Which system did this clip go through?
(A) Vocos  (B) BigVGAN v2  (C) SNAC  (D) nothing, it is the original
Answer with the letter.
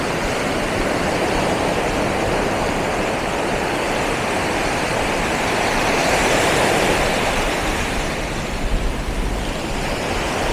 B